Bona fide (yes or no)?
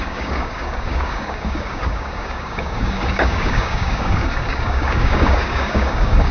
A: no